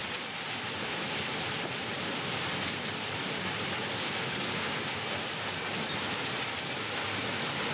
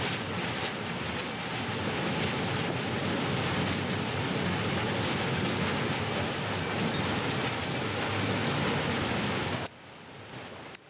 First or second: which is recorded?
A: second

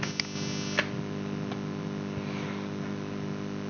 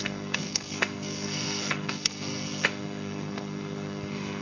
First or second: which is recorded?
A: first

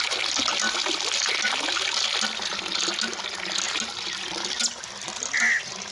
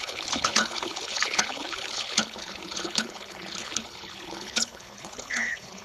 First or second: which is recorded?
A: first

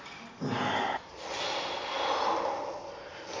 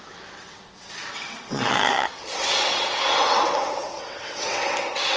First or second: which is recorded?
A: first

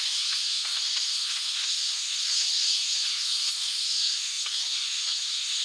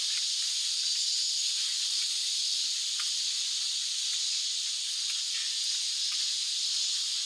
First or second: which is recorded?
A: second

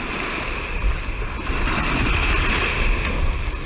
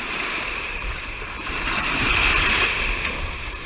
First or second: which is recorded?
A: first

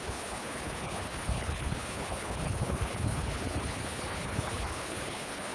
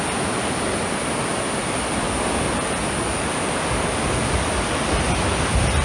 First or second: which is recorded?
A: second